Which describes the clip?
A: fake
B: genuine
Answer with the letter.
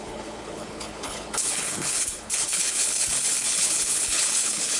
A